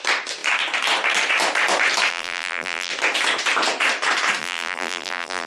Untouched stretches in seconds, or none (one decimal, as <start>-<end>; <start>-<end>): 0.0-2.1; 2.9-4.4